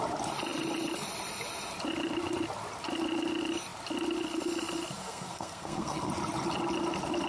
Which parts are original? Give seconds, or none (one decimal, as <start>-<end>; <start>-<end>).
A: 0.0-5.0; 6.1-7.3